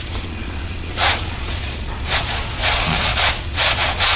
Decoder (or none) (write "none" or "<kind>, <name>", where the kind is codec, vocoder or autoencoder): vocoder, Vocos